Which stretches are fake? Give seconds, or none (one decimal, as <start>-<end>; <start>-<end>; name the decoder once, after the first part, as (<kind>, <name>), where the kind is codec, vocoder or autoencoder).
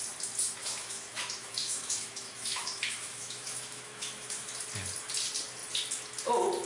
0.6-4.6 (autoencoder, DAC-VAE)